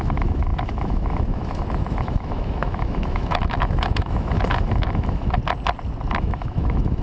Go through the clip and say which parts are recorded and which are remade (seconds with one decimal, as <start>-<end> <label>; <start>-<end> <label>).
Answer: 0.0-5.4 remade; 5.4-6.2 recorded; 6.2-7.0 remade